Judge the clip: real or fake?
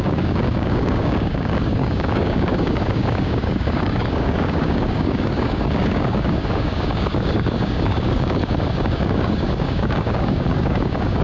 fake